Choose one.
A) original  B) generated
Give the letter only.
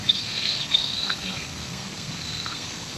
B